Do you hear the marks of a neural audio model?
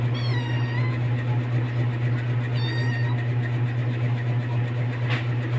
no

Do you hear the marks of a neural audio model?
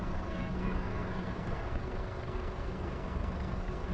yes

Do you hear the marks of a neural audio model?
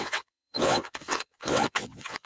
yes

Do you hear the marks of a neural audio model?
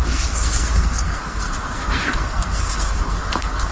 yes